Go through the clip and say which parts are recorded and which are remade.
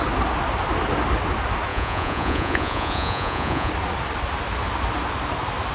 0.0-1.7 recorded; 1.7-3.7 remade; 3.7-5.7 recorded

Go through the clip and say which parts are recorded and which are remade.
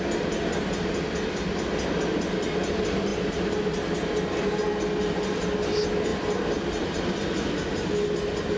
0.0-8.6 recorded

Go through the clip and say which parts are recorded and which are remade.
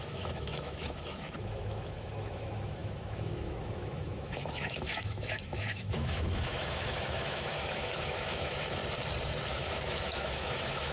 0.0-8.8 remade; 8.8-9.5 recorded; 9.5-10.9 remade